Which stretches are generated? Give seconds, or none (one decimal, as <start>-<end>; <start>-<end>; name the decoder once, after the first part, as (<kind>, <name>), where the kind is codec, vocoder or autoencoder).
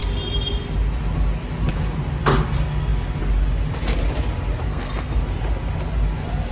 4.7-5.2 (codec, SNAC)